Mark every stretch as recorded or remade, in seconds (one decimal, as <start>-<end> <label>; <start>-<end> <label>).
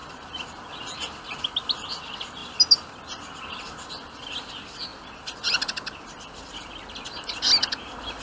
0.0-8.2 recorded